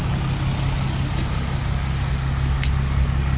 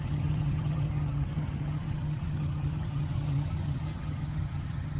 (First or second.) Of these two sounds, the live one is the first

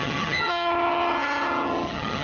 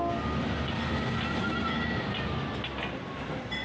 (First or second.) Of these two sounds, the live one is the second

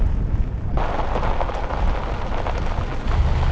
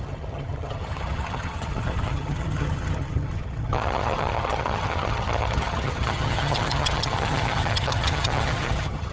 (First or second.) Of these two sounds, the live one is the first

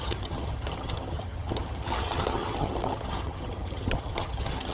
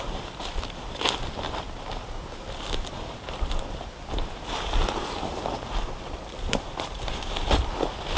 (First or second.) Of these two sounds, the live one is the second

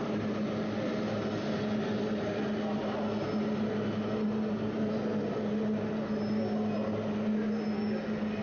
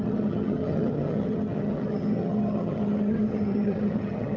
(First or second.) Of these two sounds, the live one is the first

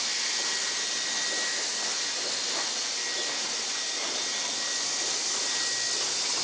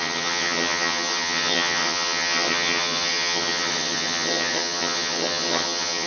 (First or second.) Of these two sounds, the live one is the first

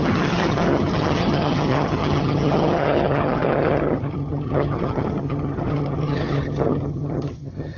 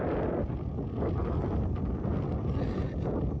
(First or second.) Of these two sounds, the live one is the second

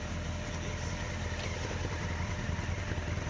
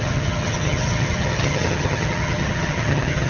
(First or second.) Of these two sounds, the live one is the first